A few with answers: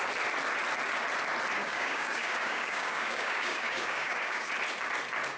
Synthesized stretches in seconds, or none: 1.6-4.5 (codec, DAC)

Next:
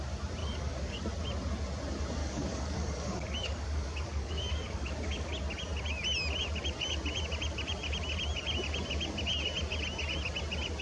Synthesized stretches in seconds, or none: 0.4-1.0 (codec, DAC); 2.2-5.3

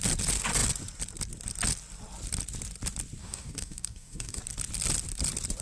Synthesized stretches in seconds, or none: 3.2-4.4 (codec, DAC)

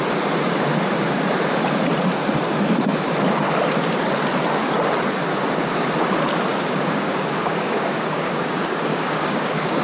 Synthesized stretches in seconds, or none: 6.5-9.8 (codec, DAC)

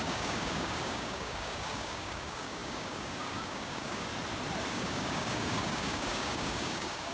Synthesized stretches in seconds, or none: 0.0-4.1 (codec, DAC); 4.7-7.1

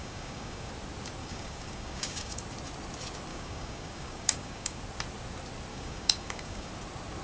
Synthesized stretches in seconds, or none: 0.0-0.7 (codec, DAC); 1.2-2.4; 3.3-4.8; 5.7-6.7